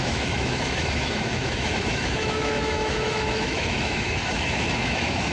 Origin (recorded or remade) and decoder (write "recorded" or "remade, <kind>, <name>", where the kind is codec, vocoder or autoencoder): remade, autoencoder, DAC-VAE